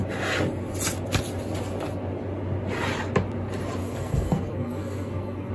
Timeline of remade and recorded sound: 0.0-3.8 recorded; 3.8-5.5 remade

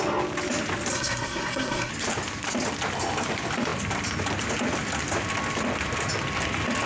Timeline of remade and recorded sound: 0.0-0.9 recorded; 0.9-1.9 remade; 1.9-6.9 recorded

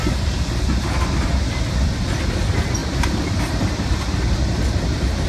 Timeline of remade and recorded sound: 0.0-2.8 recorded; 2.8-3.7 remade; 3.7-5.3 recorded

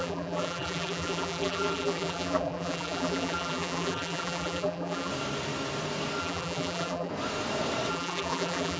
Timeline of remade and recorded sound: 0.0-5.1 remade; 5.1-6.2 recorded; 6.2-7.1 remade; 7.1-7.9 recorded; 7.9-8.8 remade

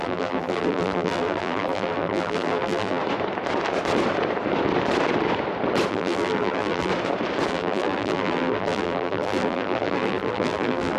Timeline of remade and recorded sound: 0.0-3.0 remade; 3.0-5.9 recorded; 5.9-6.9 remade; 6.9-7.5 recorded; 7.5-11.0 remade

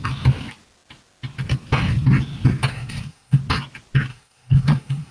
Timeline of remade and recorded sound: 0.0-2.7 recorded; 2.7-3.4 remade; 3.4-4.1 recorded; 4.1-5.1 remade